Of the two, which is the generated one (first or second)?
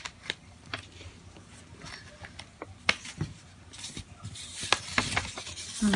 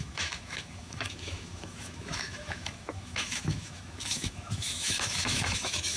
second